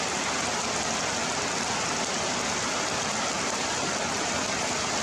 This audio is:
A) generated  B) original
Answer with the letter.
B